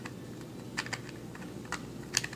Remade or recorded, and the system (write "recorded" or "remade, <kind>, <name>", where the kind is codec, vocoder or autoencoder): recorded